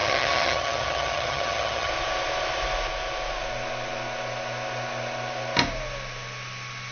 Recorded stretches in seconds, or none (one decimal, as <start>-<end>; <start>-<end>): 1.9-6.9